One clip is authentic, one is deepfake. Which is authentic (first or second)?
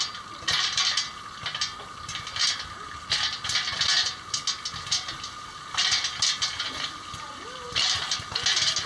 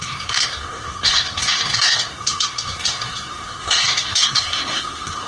first